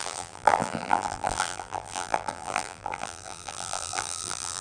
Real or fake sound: fake